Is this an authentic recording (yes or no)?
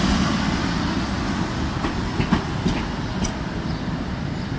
yes